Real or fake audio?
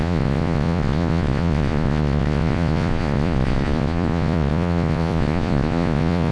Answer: fake